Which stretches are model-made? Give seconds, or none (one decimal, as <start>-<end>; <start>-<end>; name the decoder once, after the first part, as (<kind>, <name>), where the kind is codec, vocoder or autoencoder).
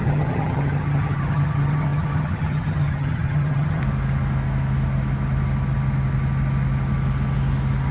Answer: 0.0-3.8 (vocoder, HiFi-GAN)